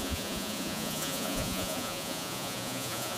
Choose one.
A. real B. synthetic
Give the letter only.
B